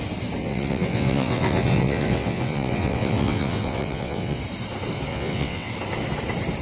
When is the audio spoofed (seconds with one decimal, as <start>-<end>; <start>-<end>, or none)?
0.4-4.4; 5.1-5.7